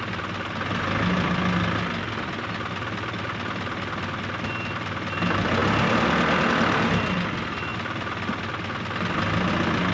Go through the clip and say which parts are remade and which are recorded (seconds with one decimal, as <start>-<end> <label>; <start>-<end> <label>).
0.0-9.9 recorded